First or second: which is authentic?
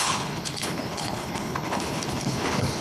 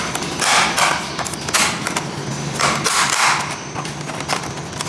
second